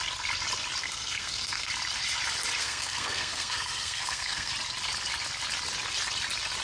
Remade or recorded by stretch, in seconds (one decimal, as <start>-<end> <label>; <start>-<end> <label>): 0.0-0.8 recorded; 0.8-1.7 remade; 1.7-2.6 recorded; 2.6-4.5 remade; 4.5-6.6 recorded